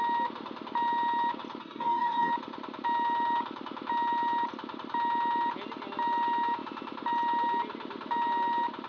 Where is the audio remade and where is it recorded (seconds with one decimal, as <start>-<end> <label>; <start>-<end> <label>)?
0.0-1.6 recorded; 1.6-2.3 remade; 2.3-8.9 recorded